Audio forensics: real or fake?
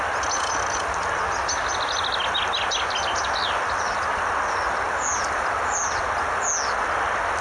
real